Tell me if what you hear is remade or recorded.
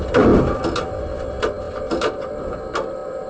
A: recorded